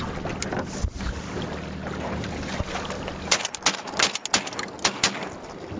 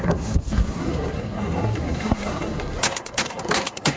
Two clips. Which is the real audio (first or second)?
first